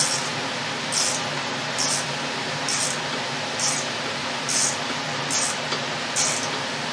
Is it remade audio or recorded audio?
recorded